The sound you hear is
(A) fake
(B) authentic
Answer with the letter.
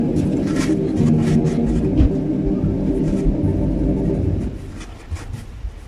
B